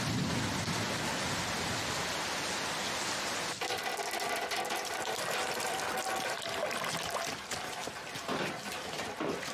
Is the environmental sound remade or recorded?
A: recorded